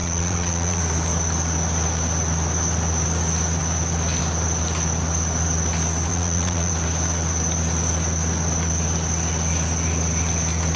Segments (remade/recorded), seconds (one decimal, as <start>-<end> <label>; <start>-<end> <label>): 0.0-0.8 remade; 0.8-6.1 recorded; 6.1-6.7 remade; 6.7-10.8 recorded